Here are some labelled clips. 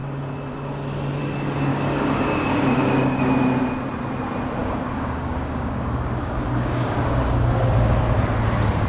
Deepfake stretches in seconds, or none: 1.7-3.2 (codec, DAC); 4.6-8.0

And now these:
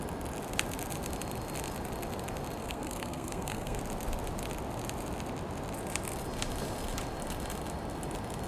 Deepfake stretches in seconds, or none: 2.6-3.8 (codec, SNAC)

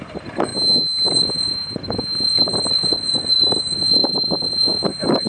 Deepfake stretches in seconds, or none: 0.0-0.5 (vocoder, BigVGAN v2); 1.1-5.3

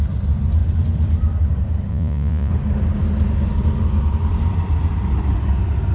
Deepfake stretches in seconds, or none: 1.9-2.5 (vocoder, Vocos)

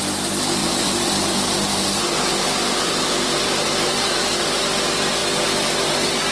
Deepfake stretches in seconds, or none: 0.6-4.4 (vocoder, BigVGAN v2)

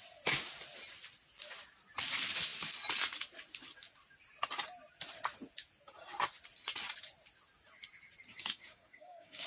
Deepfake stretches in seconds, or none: 8.3-9.5 (codec, DAC)

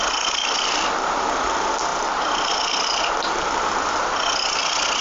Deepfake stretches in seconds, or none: none